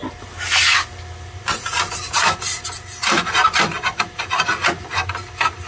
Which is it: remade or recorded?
recorded